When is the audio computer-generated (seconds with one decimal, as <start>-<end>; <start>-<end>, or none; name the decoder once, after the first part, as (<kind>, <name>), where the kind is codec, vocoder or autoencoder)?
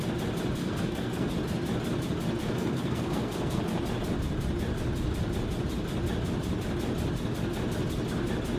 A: 0.6-1.3 (codec, SNAC); 2.4-3.6